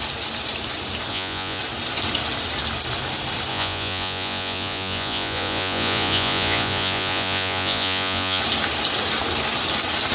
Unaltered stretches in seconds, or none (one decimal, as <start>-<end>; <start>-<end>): 0.0-1.1; 1.6-3.5; 8.4-10.1